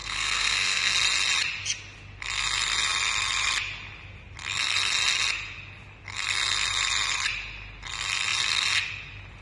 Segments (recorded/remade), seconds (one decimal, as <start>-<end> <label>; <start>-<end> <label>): 0.0-0.9 remade; 0.9-9.4 recorded